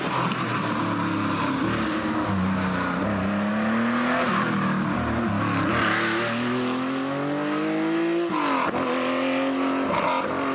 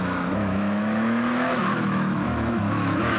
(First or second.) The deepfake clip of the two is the second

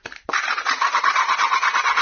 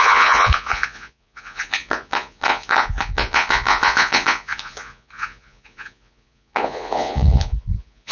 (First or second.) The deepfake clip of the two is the second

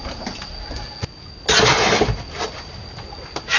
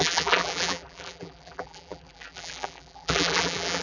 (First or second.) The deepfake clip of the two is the second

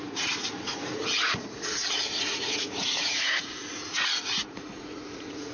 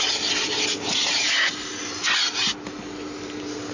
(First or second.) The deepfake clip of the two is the first